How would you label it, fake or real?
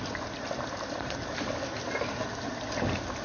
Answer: real